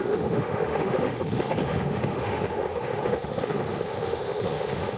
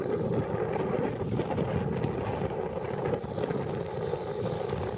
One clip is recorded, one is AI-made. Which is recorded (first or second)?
second